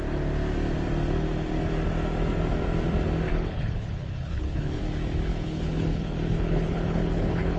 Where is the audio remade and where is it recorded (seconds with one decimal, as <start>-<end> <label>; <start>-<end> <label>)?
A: 0.0-3.3 recorded; 3.3-4.8 remade; 4.8-5.3 recorded; 5.3-7.6 remade